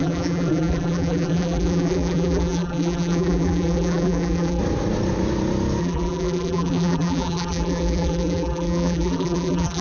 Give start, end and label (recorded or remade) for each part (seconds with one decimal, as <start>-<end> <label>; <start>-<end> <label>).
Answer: 0.0-4.6 remade; 4.6-5.8 recorded; 5.8-9.8 remade